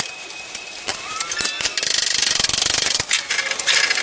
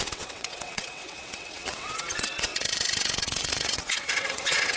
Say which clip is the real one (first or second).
first